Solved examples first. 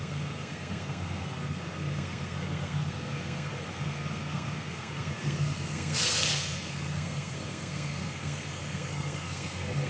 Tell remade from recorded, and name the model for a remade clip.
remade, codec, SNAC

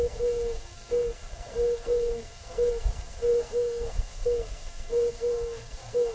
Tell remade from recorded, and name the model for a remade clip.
remade, codec, SNAC